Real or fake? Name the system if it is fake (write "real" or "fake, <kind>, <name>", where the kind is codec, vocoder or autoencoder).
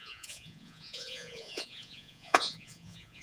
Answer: fake, vocoder, Vocos